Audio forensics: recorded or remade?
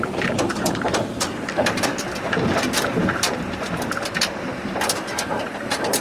remade